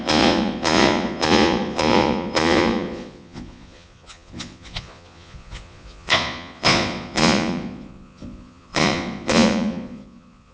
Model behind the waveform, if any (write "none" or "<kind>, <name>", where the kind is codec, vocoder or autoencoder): vocoder, Vocos